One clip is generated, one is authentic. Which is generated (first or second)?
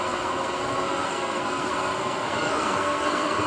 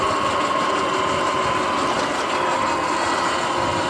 first